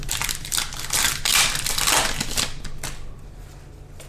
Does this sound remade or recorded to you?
recorded